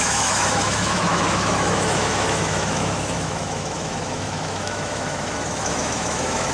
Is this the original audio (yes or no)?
no